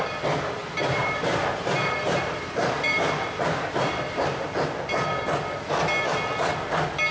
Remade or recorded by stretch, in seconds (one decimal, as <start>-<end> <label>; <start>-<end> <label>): 0.0-0.6 recorded; 0.6-4.9 remade; 4.9-7.1 recorded